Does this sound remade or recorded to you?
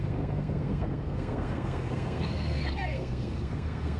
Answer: remade